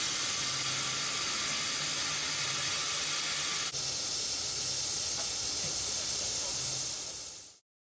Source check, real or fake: real